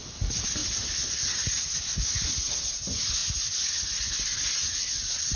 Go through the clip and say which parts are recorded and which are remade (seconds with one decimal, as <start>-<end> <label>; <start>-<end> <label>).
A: 0.0-5.4 recorded